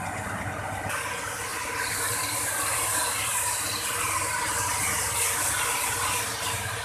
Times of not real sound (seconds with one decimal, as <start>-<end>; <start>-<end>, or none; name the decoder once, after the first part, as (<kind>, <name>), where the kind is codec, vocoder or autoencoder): 1.5-2.1 (vocoder, BigVGAN v2)